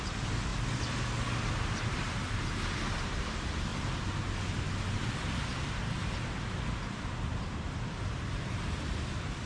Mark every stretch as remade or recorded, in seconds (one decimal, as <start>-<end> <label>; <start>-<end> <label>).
0.0-0.5 remade; 0.5-2.9 recorded; 2.9-3.7 remade; 3.7-6.9 recorded; 6.9-9.5 remade